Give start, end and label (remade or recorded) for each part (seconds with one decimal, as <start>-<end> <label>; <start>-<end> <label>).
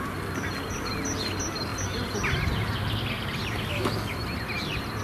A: 0.0-5.0 recorded